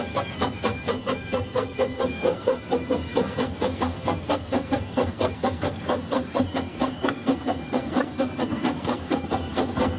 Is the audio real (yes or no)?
no